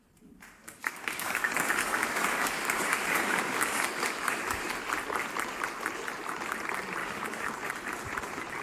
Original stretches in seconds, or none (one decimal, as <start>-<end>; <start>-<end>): 0.0-0.6; 4.7-7.0; 7.5-8.6